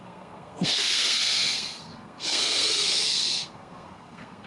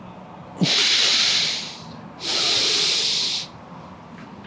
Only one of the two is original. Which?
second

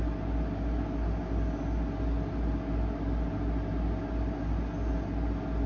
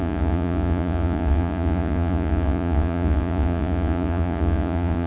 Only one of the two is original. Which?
first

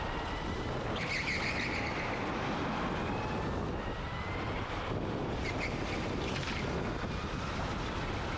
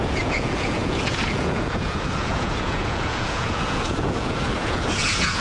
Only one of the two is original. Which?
first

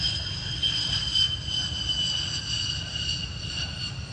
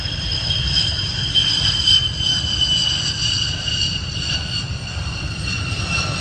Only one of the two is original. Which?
first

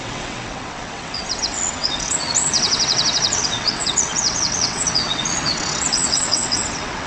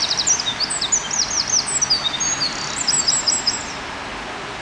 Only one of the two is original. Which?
second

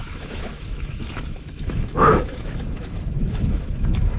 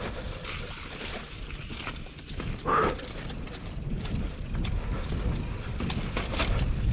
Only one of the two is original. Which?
second